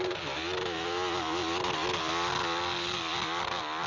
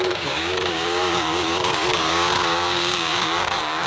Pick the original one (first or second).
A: first